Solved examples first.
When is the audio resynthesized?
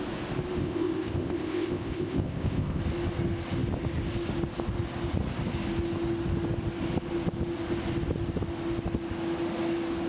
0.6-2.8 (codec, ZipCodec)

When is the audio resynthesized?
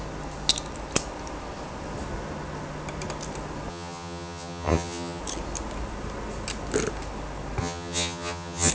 3.7-5.2 (vocoder, HiFi-GAN); 7.6-8.7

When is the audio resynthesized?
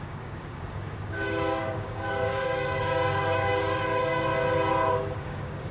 0.0-4.3 (codec, DAC); 4.9-5.7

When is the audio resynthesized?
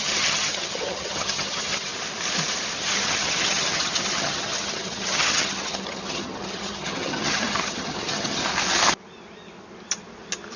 0.0-1.9 (vocoder, HiFi-GAN); 2.8-8.4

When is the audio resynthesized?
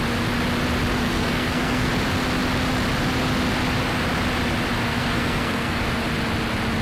1.0-1.9 (codec, SNAC); 4.9-5.8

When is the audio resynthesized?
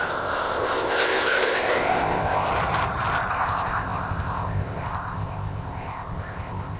0.0-2.5 (codec, ZipCodec); 3.3-6.8